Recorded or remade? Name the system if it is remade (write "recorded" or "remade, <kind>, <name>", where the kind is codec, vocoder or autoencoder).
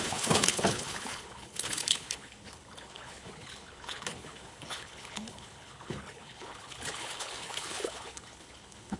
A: remade, codec, HILCodec